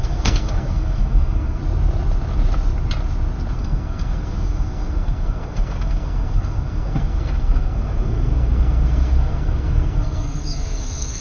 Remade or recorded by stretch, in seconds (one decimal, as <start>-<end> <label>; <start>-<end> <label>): 0.0-1.6 remade; 1.6-3.5 recorded; 3.5-11.2 remade